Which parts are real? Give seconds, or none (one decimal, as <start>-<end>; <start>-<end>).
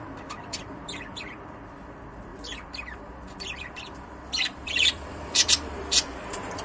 none